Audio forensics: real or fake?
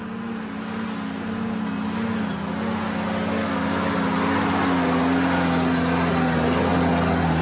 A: real